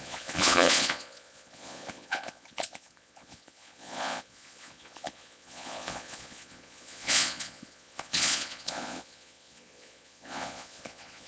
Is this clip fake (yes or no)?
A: yes